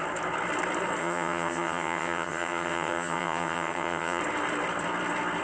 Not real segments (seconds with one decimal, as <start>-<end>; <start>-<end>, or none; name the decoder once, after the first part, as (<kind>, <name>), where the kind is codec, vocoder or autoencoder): 1.0-4.2 (vocoder, HiFi-GAN)